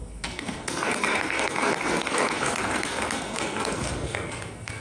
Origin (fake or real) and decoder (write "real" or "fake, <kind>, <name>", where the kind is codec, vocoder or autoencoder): fake, codec, SNAC